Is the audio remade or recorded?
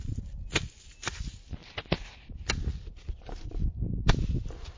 recorded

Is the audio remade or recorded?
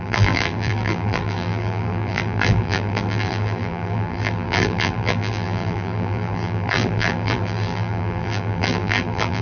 remade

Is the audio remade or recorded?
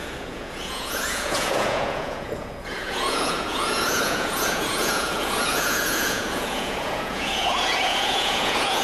remade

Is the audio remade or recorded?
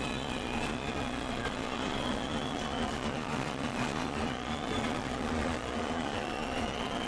remade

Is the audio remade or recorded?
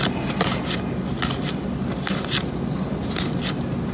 recorded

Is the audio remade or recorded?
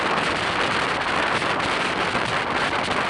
recorded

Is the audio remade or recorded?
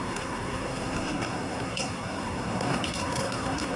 remade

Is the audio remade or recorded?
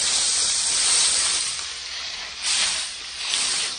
remade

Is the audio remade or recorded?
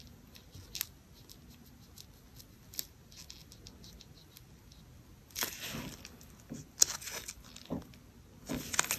recorded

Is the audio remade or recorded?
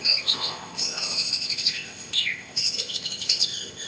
remade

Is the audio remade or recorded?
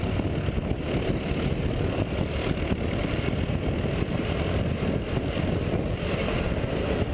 recorded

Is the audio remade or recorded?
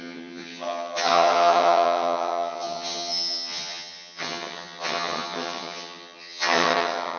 remade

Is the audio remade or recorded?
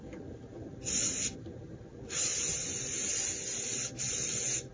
recorded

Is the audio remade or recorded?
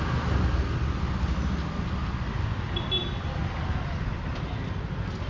recorded